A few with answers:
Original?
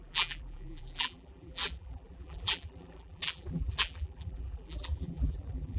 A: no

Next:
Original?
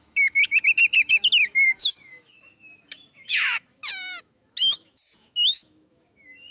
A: no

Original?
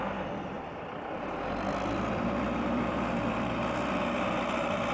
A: no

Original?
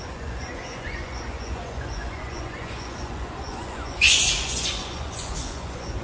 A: no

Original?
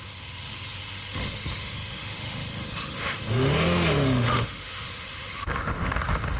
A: no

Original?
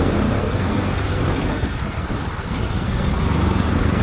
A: no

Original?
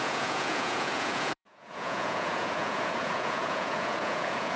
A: no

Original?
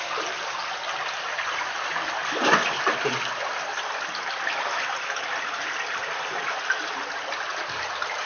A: yes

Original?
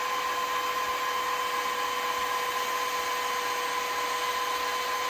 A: yes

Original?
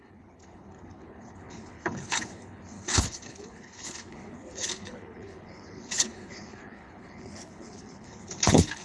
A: no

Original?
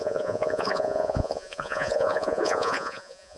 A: no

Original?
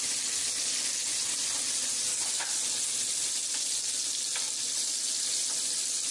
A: yes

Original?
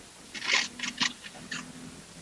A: yes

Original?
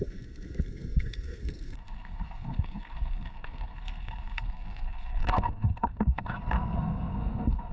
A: no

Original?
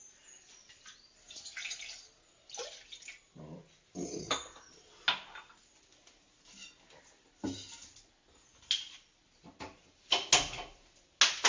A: yes